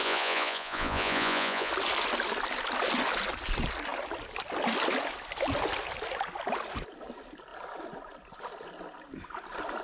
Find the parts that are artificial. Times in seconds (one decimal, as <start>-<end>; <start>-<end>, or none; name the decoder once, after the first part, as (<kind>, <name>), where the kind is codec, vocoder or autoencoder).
0.0-1.7 (vocoder, Vocos)